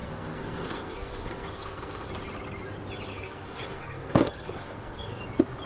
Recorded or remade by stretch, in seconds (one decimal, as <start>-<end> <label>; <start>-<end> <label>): 0.0-2.1 remade; 2.1-3.1 recorded; 3.1-5.2 remade; 5.2-5.7 recorded